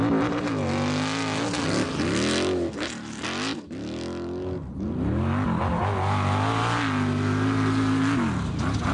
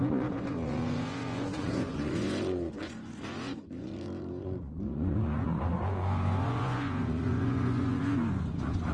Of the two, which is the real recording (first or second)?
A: first